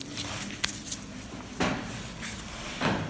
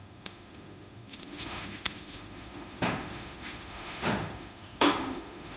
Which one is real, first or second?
first